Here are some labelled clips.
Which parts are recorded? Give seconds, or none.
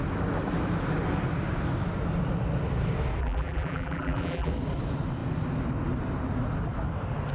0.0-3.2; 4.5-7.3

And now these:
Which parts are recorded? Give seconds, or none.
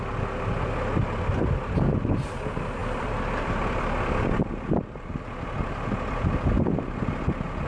0.0-2.8; 4.4-7.7